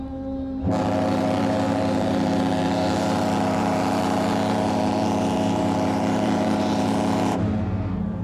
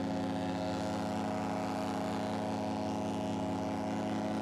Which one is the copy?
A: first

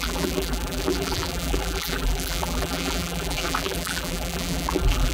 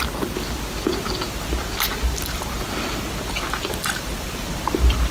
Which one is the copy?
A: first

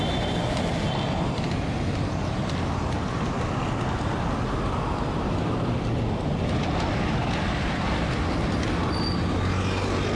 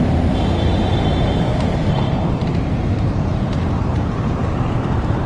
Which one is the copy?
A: second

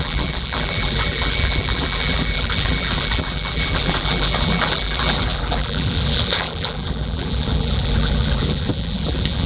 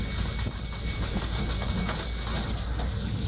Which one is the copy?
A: first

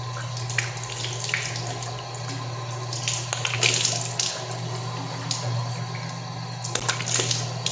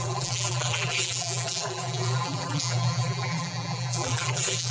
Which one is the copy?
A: second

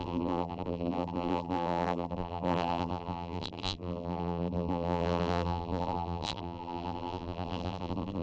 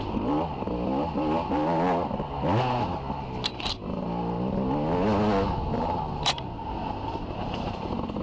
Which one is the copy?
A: first